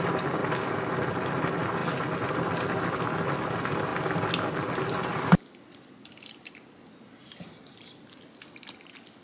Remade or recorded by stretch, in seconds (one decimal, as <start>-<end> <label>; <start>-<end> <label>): 0.0-9.2 recorded